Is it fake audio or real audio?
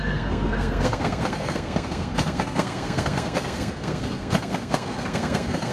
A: fake